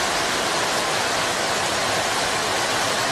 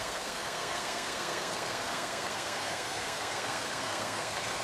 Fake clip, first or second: second